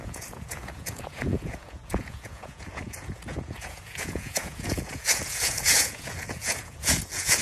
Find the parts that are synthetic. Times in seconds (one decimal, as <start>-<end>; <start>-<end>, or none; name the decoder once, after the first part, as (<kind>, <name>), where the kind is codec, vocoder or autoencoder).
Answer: 0.0-7.4 (vocoder, Vocos)